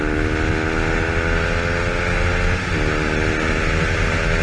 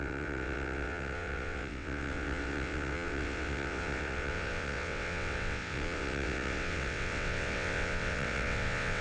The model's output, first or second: second